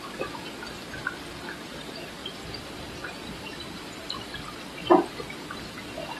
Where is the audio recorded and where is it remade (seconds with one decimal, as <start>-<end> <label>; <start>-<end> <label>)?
0.0-2.2 recorded; 2.2-4.5 remade; 4.5-6.2 recorded